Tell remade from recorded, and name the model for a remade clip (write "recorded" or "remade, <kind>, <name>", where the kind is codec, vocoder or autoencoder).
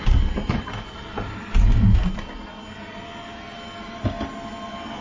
recorded